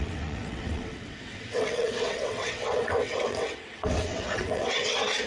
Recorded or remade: remade